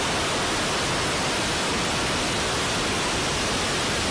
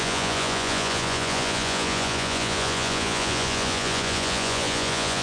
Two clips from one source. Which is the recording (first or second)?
first